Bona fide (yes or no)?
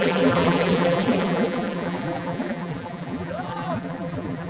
no